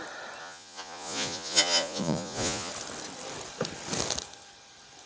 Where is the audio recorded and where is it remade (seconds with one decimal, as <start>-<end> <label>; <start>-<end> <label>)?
0.0-0.4 recorded; 0.4-2.7 remade; 2.7-5.1 recorded